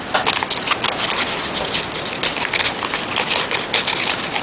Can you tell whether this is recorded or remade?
recorded